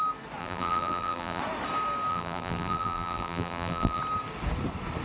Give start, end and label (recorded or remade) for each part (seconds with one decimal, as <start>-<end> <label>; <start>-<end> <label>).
0.0-0.4 recorded; 0.4-1.4 remade; 1.4-2.1 recorded; 2.1-4.0 remade; 4.0-5.0 recorded